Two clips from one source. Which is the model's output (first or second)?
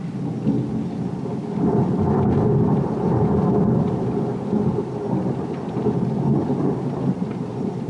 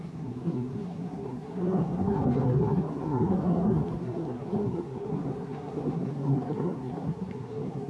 second